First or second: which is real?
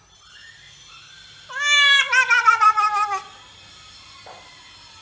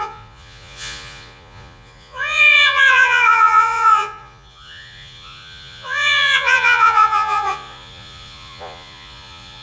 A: first